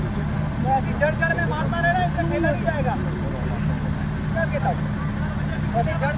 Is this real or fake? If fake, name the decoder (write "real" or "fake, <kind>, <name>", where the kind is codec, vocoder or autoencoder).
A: real